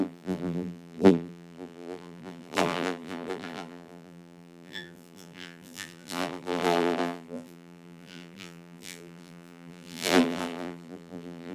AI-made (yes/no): yes